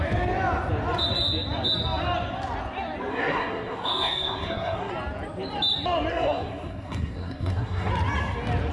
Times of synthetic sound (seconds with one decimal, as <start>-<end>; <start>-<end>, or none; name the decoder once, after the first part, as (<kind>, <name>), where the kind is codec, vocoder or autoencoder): 3.1-4.9 (codec, SNAC); 6.1-7.9